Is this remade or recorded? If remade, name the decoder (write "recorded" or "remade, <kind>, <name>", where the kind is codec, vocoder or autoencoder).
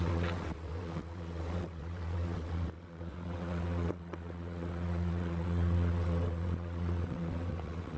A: remade, vocoder, WaveNeXt